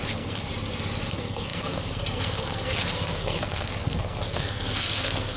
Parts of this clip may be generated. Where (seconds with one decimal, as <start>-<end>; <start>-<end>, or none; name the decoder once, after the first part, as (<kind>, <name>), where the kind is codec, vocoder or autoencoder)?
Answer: 0.0-0.5 (codec, SNAC); 1.1-5.4

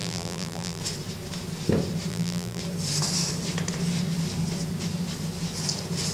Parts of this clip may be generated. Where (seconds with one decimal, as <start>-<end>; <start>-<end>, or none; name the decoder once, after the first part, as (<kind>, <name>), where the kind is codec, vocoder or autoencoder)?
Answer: 0.0-0.8 (vocoder, BigVGAN v2); 2.1-2.6

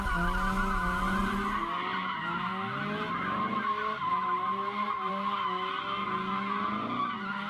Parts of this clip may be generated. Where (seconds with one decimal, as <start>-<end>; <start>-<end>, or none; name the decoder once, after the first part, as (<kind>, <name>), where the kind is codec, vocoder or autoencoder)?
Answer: 1.9-2.5 (vocoder, BigVGAN v2); 3.8-5.1